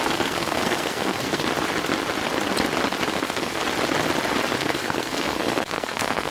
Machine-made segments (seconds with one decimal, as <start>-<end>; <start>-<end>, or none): 0.0-1.5; 3.1-3.6; 4.6-6.3